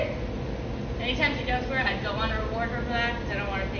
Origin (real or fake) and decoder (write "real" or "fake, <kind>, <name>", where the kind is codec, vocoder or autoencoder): real